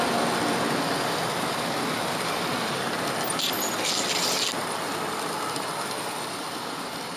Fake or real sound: real